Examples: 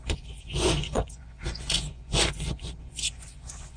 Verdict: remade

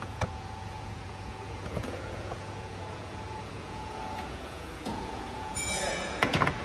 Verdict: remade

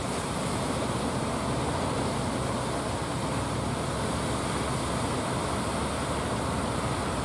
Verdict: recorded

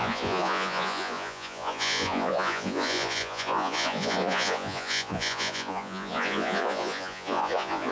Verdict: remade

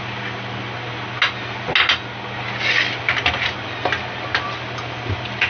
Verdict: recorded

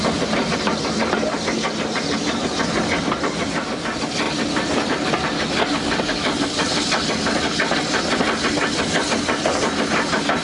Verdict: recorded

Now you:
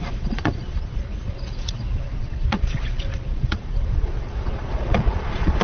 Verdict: remade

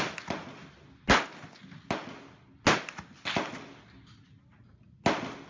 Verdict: recorded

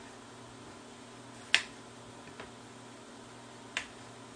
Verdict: recorded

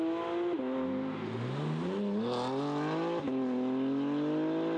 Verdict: recorded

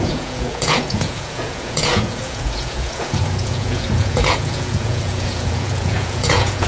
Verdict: remade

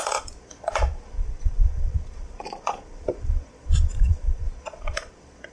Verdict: remade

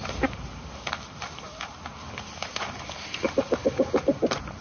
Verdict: recorded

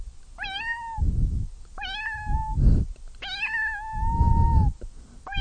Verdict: recorded